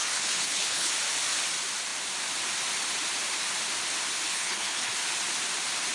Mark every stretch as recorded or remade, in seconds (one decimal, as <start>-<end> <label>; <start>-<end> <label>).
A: 0.0-0.9 remade; 0.9-4.3 recorded; 4.3-4.9 remade; 4.9-5.9 recorded